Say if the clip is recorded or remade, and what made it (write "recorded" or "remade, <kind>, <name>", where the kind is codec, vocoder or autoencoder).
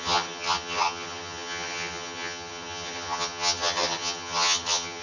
remade, vocoder, HiFi-GAN